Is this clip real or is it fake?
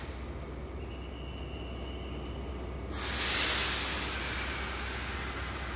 real